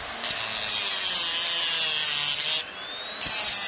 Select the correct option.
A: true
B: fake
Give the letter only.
A